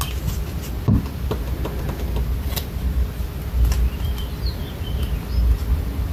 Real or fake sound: real